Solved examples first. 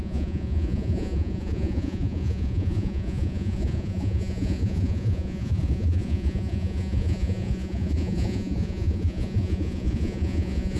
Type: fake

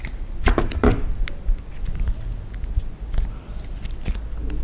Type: real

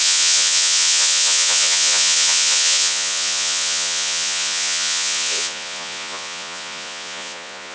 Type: fake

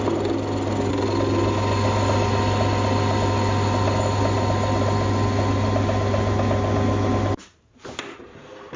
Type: real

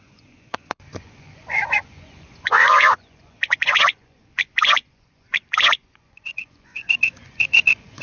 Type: fake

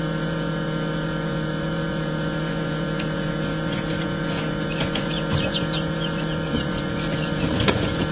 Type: fake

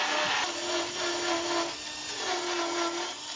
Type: real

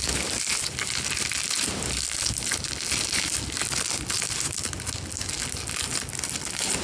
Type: real